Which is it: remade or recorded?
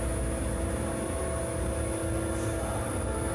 recorded